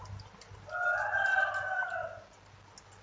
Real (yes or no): yes